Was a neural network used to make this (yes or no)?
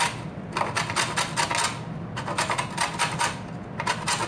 no